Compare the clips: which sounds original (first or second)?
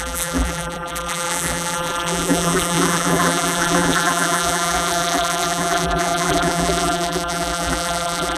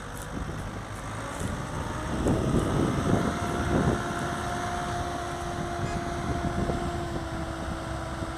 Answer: second